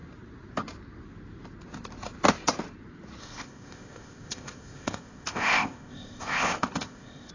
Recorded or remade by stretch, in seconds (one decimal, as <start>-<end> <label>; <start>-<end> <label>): 0.0-3.2 recorded; 3.2-7.3 remade